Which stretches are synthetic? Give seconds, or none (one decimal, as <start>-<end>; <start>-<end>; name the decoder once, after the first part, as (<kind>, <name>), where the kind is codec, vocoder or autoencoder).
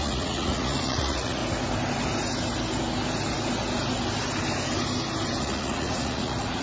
0.0-1.4 (vocoder, Vocos); 5.4-6.6